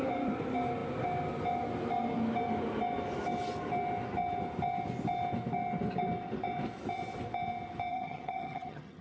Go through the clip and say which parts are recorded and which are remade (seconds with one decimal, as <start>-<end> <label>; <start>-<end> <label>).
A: 0.0-7.9 recorded; 7.9-9.0 remade